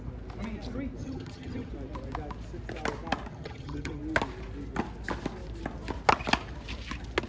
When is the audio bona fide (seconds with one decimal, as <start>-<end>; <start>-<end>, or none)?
0.0-1.0; 1.7-3.3; 4.0-7.3